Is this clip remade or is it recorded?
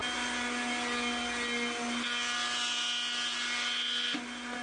recorded